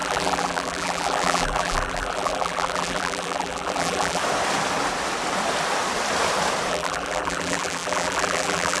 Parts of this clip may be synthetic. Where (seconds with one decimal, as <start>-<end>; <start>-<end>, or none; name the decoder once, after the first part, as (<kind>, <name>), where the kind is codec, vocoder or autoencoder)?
0.0-4.2 (vocoder, BigVGAN v2); 6.7-8.8